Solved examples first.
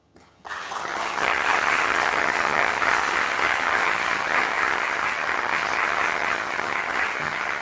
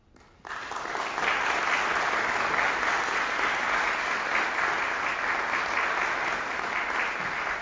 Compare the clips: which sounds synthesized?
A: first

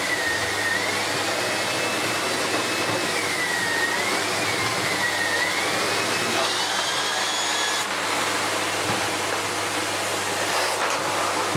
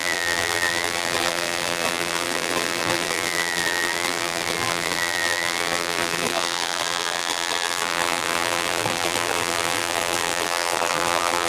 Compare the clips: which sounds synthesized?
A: second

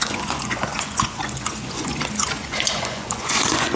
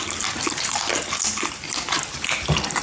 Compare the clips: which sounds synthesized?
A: first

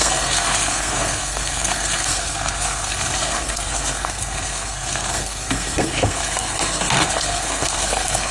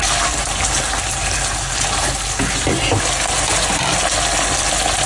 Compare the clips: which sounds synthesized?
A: first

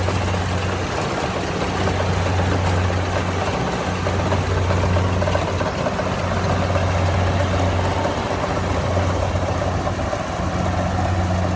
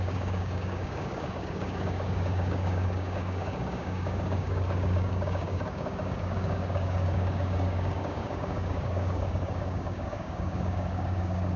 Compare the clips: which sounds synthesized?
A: second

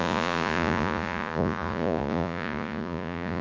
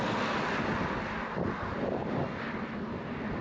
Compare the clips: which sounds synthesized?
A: first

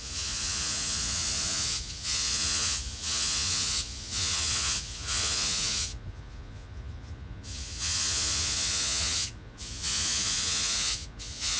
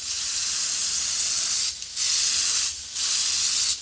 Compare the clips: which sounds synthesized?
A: first